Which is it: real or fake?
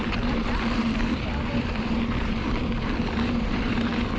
fake